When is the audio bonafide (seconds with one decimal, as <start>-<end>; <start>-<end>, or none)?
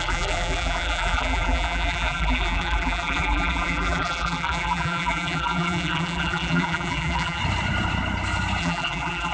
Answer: 7.4-8.6